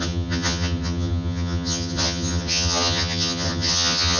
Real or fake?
fake